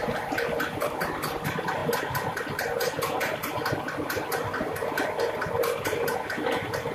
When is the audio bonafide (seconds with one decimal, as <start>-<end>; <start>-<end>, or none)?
0.0-6.9